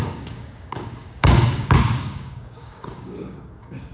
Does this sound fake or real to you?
fake